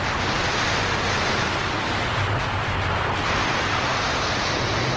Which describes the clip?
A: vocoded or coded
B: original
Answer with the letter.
B